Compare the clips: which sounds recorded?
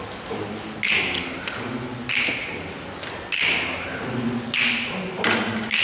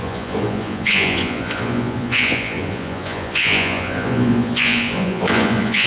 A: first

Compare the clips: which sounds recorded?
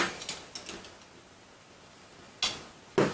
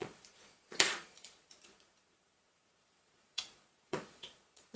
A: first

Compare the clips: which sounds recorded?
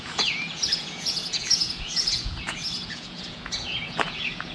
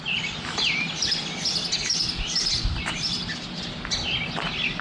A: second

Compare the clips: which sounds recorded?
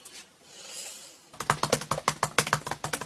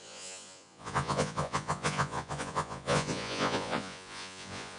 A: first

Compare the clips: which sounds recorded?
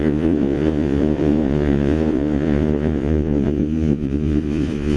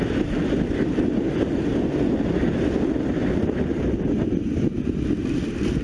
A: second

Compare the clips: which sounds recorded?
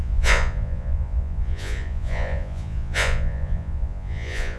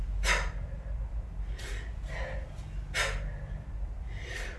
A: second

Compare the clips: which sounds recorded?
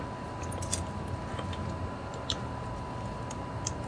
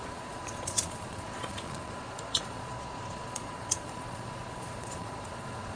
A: first